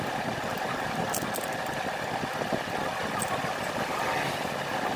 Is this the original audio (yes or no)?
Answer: yes